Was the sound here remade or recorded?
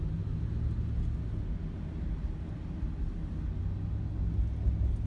recorded